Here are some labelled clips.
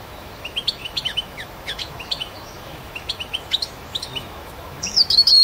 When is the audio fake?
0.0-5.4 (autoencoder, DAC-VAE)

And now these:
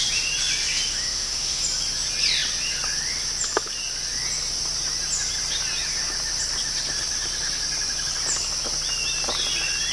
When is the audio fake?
0.9-1.6 (autoencoder, DAC-VAE)

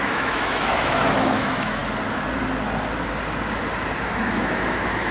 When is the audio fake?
0.0-1.8 (autoencoder, DAC-VAE); 4.0-5.1

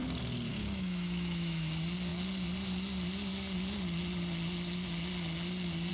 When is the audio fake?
0.5-1.7 (autoencoder, DAC-VAE)

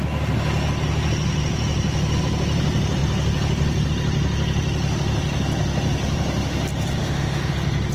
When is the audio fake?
7.0-7.5 (autoencoder, DAC-VAE)

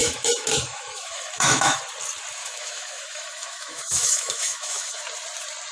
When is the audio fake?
0.0-1.8 (autoencoder, DAC-VAE); 2.4-5.0